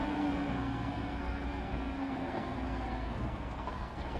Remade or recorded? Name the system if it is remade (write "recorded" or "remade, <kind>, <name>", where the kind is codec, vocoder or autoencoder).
remade, codec, SNAC